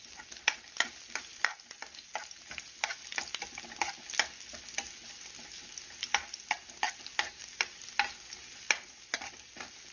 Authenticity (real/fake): real